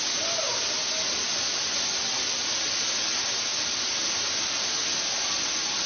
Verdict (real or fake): real